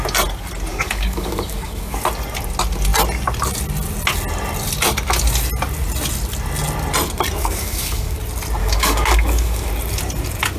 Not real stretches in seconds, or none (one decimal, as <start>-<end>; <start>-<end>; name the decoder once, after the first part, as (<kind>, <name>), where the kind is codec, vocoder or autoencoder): 0.7-2.0 (codec, DAC); 7.4-8.2; 8.6-9.7